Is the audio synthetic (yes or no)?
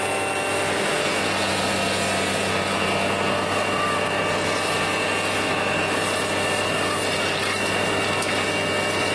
no